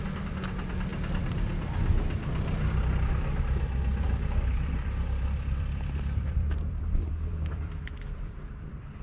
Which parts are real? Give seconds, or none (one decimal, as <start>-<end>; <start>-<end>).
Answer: 0.9-3.4